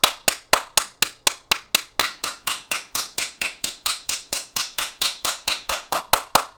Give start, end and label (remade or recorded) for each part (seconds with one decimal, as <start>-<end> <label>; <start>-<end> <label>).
0.0-2.0 recorded; 2.0-6.0 remade; 6.0-6.6 recorded